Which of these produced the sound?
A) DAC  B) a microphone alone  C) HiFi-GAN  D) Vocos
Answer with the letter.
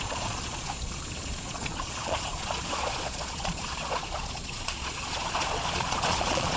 D